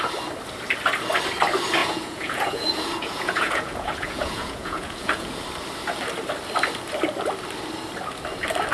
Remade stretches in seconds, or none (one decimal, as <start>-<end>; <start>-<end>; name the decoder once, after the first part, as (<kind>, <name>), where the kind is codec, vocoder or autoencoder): 1.8-5.4 (vocoder, Vocos)